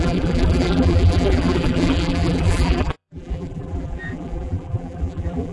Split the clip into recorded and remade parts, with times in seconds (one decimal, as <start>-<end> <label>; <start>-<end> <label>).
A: 0.0-5.5 remade

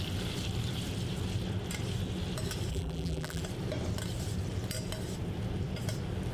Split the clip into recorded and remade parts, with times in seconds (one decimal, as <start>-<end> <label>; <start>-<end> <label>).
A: 0.0-2.7 recorded; 2.7-3.4 remade; 3.4-6.3 recorded

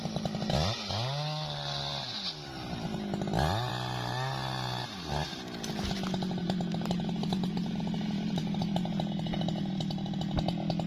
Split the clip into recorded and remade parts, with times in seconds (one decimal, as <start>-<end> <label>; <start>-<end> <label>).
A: 0.0-6.4 recorded; 6.4-9.7 remade; 9.7-10.9 recorded